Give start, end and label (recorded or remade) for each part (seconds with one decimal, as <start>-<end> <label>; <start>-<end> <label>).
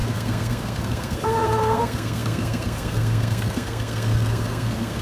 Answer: 0.0-5.0 remade